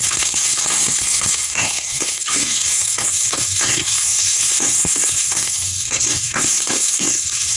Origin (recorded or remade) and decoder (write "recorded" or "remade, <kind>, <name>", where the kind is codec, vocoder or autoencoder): remade, codec, SNAC